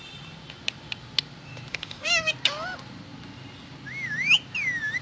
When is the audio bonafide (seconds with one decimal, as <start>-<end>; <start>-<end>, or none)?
0.0-1.7; 2.3-5.0